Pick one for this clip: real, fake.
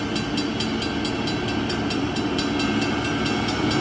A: real